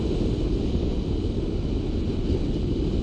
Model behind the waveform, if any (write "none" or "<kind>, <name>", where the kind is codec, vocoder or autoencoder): none